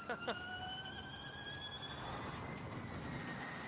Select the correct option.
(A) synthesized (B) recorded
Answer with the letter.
B